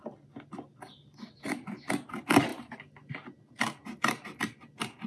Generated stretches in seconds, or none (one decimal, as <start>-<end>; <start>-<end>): none